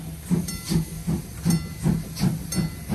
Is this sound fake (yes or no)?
no